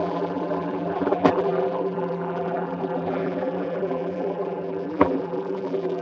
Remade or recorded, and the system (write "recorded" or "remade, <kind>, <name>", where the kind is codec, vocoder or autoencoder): remade, vocoder, BigVGAN v2